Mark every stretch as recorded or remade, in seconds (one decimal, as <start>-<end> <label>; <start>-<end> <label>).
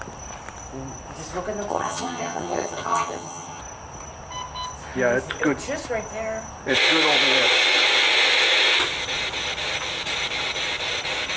0.0-1.7 recorded; 1.7-3.6 remade; 3.6-11.4 recorded